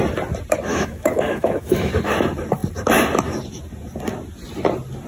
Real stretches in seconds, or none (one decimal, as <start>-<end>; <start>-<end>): 0.0-0.7; 1.9-5.1